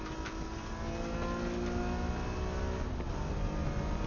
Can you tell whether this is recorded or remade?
recorded